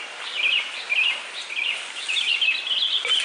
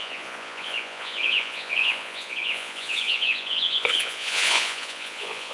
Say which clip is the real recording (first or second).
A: first